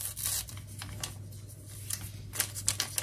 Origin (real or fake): real